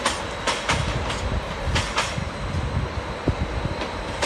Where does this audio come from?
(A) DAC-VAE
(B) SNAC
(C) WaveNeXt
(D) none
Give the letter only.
D